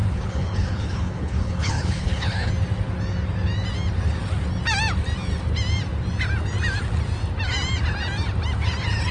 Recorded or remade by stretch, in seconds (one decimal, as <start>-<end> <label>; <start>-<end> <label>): 0.0-2.5 remade; 2.5-9.1 recorded